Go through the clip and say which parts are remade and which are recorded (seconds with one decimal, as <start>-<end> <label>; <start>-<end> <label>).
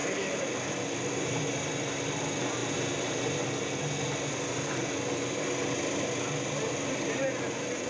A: 0.0-7.9 recorded